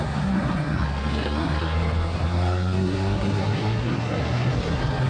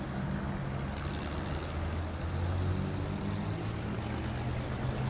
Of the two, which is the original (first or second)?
second